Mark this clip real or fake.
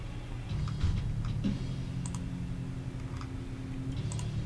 real